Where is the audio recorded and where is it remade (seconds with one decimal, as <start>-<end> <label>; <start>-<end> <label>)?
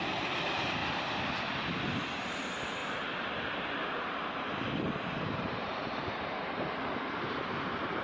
0.0-0.8 remade; 0.8-2.2 recorded; 2.2-8.0 remade